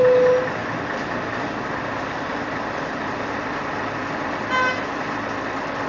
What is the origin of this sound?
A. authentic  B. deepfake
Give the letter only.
A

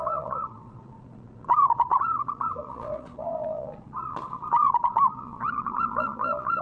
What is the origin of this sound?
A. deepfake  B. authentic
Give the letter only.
A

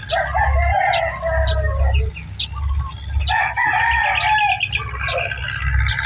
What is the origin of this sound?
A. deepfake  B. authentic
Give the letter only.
B